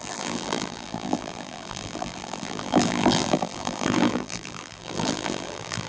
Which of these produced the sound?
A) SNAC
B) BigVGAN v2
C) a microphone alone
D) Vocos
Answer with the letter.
B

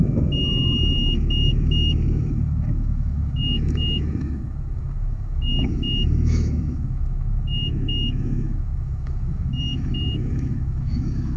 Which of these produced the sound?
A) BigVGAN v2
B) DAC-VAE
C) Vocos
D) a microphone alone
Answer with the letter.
B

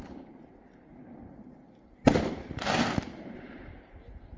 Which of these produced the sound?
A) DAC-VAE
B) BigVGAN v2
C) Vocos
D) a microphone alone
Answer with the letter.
B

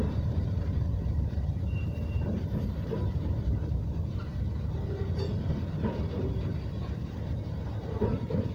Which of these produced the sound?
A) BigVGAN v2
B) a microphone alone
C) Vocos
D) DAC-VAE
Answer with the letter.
A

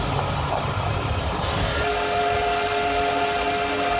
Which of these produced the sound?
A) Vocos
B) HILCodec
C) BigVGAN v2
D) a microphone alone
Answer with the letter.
D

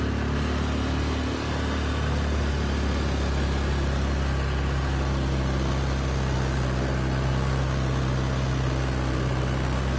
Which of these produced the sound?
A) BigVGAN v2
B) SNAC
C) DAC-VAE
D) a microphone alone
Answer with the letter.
D